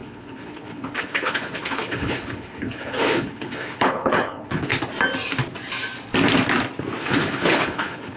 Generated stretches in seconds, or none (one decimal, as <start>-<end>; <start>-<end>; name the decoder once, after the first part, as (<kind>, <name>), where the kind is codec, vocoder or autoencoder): 0.0-4.7 (codec, HILCodec); 7.0-8.2